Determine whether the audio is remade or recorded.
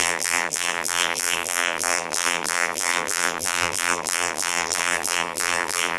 remade